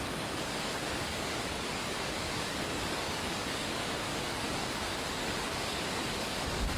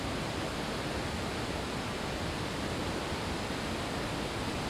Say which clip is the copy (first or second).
first